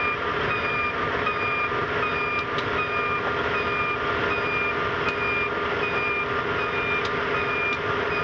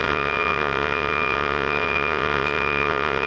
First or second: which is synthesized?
second